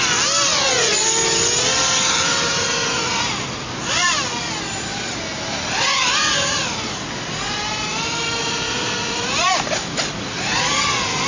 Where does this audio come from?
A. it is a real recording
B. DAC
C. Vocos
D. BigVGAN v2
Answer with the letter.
A